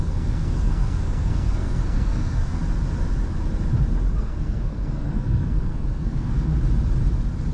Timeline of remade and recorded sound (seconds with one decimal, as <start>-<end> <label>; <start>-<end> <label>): 0.0-2.6 remade; 2.6-4.2 recorded; 4.2-6.5 remade; 6.5-7.5 recorded

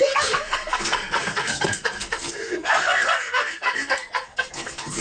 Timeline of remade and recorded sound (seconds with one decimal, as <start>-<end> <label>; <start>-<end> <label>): 0.0-5.0 remade

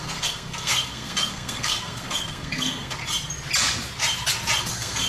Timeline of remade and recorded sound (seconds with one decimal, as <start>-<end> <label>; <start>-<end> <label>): 0.0-3.0 remade; 3.0-4.6 recorded; 4.6-5.1 remade

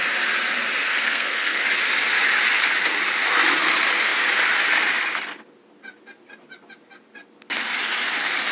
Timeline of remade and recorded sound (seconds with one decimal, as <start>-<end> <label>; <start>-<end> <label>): 0.0-0.9 recorded; 0.9-1.6 remade; 1.6-8.5 recorded

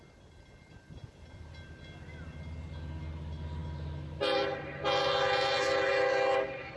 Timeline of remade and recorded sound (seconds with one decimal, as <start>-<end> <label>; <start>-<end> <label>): 0.0-6.8 recorded

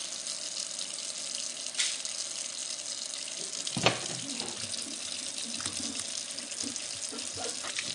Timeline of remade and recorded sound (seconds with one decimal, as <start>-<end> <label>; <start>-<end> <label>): 0.0-7.9 recorded